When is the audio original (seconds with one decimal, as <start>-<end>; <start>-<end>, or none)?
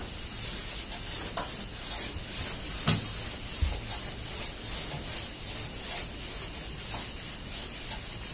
0.0-8.3